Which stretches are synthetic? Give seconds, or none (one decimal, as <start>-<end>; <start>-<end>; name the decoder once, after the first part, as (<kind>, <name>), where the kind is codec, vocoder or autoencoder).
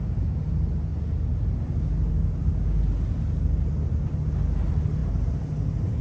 none